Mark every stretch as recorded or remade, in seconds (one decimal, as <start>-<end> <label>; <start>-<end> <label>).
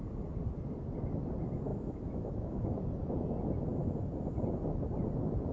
0.0-1.7 recorded; 1.7-2.8 remade; 2.8-5.5 recorded